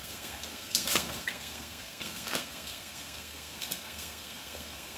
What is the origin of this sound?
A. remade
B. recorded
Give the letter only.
A